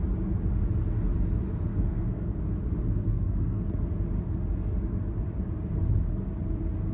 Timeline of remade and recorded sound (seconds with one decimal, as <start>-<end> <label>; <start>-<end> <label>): 0.0-1.7 recorded; 1.7-2.4 remade; 2.4-3.0 recorded; 3.0-3.6 remade; 3.6-6.9 recorded